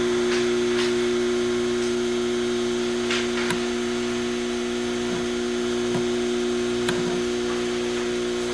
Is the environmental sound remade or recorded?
recorded